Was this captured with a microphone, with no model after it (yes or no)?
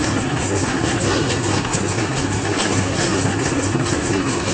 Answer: no